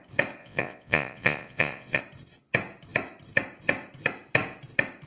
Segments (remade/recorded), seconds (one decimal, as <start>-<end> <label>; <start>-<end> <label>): 0.0-0.4 recorded; 0.4-2.0 remade; 2.0-5.1 recorded